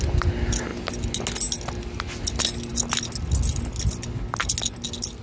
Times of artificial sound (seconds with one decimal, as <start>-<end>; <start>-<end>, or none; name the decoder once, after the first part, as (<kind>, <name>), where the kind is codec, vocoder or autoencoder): none